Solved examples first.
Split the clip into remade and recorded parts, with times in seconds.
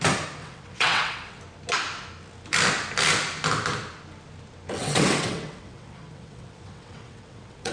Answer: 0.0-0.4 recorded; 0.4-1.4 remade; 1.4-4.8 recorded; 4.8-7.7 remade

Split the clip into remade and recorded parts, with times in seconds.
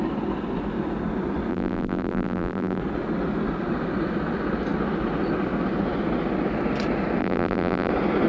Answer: 0.0-1.5 recorded; 1.5-2.8 remade; 2.8-7.2 recorded; 7.2-7.9 remade; 7.9-8.3 recorded